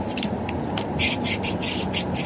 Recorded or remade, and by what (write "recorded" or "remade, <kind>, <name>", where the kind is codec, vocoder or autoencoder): recorded